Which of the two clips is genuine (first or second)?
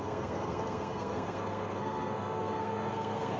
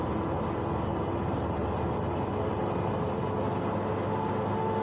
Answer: second